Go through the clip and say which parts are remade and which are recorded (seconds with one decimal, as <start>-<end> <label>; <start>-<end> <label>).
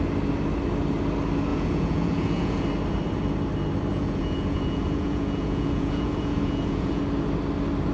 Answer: 0.0-1.5 recorded; 1.5-2.6 remade; 2.6-3.9 recorded; 3.9-7.0 remade; 7.0-7.9 recorded